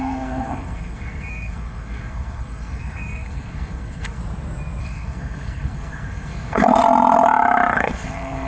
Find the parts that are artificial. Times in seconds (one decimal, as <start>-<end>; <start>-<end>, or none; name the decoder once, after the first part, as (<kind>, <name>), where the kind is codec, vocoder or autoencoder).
0.0-4.2 (codec, SNAC); 4.8-6.8; 7.7-8.5